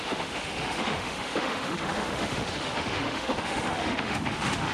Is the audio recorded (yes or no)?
no